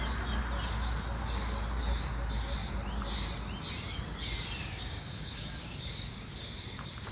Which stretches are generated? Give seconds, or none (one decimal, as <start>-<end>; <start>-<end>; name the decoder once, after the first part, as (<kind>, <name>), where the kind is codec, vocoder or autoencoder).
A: 4.6-7.1 (codec, DAC)